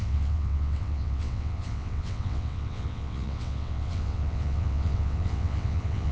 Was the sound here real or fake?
fake